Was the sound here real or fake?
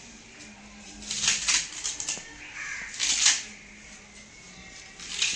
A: real